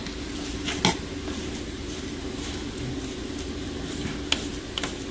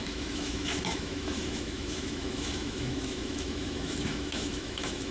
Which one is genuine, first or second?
first